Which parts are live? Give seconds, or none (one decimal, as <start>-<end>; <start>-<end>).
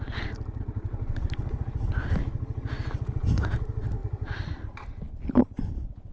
0.0-6.1